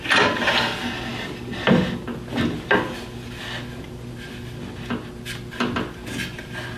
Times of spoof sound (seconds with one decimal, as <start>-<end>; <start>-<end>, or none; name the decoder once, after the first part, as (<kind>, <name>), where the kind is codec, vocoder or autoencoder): none